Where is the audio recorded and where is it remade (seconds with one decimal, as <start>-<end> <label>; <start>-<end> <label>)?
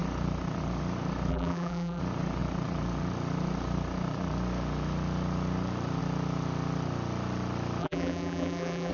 0.0-1.3 recorded; 1.3-2.0 remade; 2.0-7.8 recorded; 7.8-8.9 remade